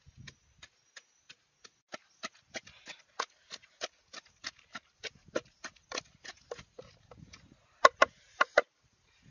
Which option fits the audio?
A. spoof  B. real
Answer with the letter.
B